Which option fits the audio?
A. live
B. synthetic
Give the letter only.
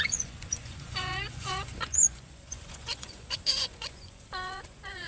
B